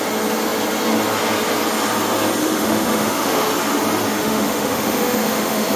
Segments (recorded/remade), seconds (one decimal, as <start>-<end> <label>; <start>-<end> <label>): 0.0-2.4 recorded; 2.4-3.5 remade; 3.5-4.2 recorded; 4.2-5.8 remade